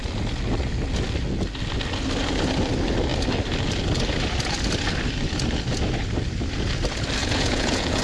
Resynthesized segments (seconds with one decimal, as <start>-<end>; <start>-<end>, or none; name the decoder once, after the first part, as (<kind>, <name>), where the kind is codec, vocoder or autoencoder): 7.2-8.0 (vocoder, Vocos)